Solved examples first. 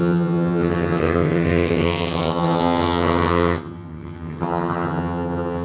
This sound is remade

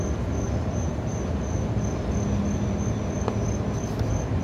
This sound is recorded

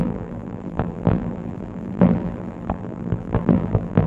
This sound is remade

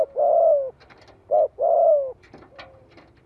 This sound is recorded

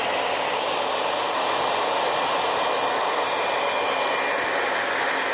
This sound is recorded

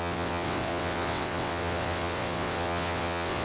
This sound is remade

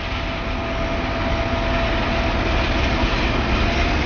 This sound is recorded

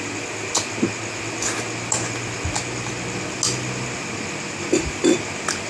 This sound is recorded